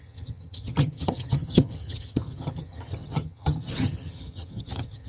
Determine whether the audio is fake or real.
fake